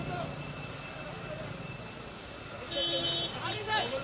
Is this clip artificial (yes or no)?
no